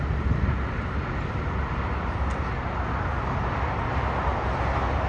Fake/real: real